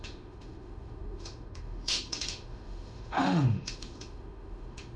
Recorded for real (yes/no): no